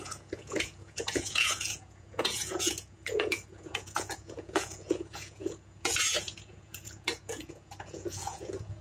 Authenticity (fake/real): fake